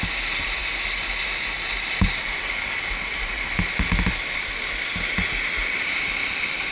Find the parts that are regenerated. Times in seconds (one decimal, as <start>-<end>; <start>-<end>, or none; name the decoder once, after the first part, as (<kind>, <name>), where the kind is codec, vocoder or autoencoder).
none